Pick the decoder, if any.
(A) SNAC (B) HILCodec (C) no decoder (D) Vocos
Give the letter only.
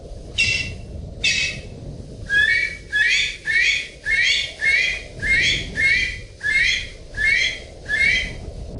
C